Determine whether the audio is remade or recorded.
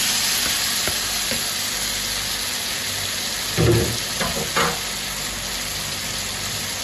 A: recorded